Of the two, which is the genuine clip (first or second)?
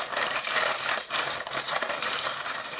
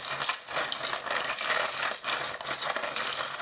second